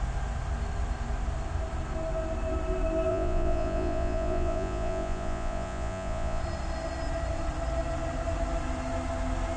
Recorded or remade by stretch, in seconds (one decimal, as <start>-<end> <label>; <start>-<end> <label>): 0.0-3.1 recorded; 3.1-6.4 remade; 6.4-9.6 recorded